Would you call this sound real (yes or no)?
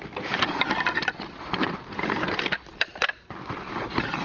yes